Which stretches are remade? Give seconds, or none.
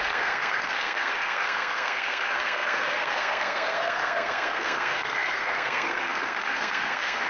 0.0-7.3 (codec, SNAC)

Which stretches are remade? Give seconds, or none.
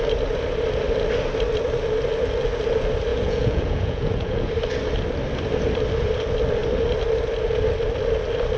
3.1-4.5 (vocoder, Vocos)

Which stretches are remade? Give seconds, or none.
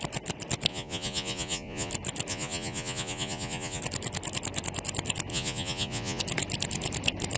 0.7-1.9 (vocoder, Vocos); 2.3-3.8; 5.3-6.2